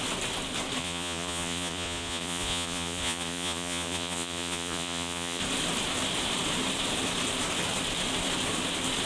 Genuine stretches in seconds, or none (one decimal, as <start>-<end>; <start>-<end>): 0.0-0.8; 5.4-9.1